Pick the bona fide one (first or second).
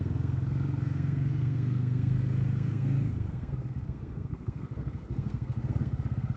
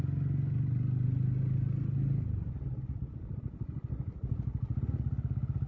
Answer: second